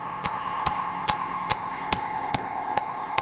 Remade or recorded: remade